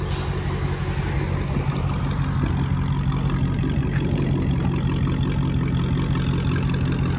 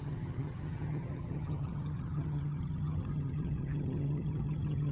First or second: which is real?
first